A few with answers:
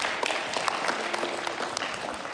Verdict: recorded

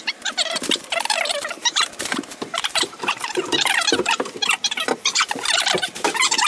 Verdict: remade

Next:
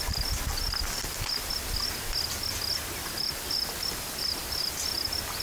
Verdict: recorded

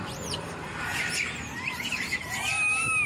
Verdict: remade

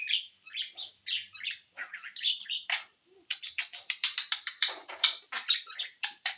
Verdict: remade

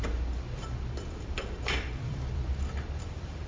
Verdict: remade